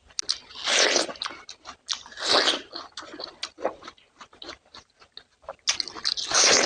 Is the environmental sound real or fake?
real